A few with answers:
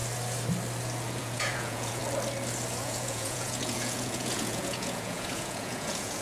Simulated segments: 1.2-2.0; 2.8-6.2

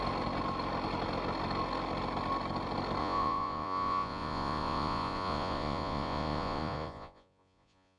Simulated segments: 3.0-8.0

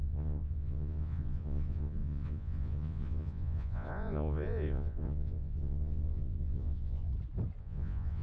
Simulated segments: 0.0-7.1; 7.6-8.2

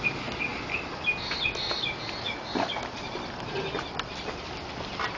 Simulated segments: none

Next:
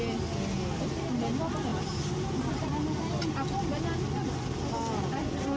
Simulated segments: none

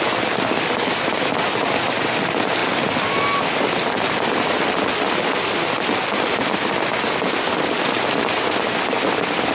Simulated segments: none

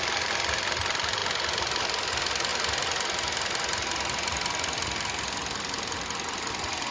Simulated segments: none

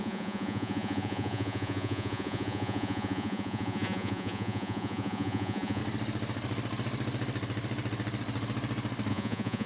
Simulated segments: 0.0-5.8; 9.1-9.7